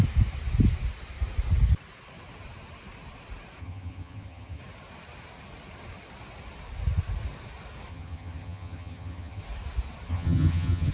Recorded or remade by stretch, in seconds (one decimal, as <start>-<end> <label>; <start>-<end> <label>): 0.0-3.6 recorded; 3.6-4.6 remade; 4.6-7.9 recorded; 7.9-9.4 remade; 9.4-10.1 recorded; 10.1-10.9 remade